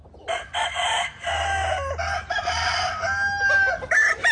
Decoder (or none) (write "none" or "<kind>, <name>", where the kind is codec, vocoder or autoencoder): none